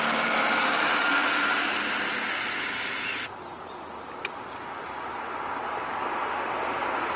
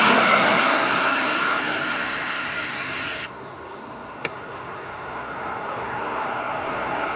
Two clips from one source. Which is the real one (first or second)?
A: first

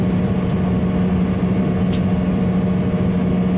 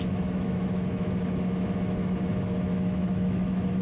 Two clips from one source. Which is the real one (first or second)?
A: first